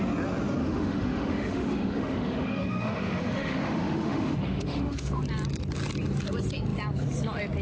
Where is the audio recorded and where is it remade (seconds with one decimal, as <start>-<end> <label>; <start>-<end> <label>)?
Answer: 0.0-0.6 recorded; 0.6-5.2 remade; 5.2-7.6 recorded

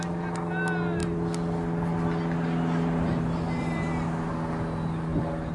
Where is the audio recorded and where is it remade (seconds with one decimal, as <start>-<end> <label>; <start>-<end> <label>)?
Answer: 0.0-5.5 recorded

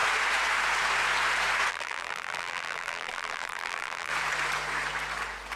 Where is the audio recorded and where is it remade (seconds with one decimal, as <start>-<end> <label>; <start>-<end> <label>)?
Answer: 0.0-1.7 recorded; 1.7-4.1 remade; 4.1-5.6 recorded

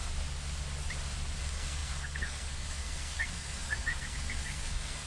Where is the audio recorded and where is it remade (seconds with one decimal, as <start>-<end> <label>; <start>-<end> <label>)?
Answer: 0.0-1.4 recorded; 1.4-5.1 remade